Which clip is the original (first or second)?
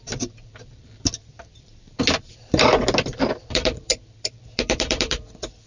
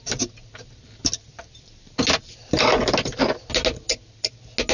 second